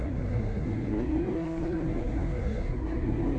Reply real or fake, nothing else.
fake